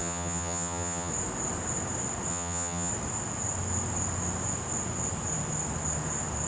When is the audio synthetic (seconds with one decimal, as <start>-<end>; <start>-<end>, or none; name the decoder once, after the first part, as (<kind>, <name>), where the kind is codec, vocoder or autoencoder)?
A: 0.0-1.1 (vocoder, HiFi-GAN); 2.3-2.9